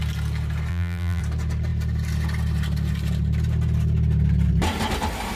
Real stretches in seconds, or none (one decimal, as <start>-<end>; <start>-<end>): 0.0-0.7; 1.2-5.4